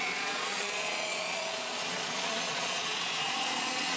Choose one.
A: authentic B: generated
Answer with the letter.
B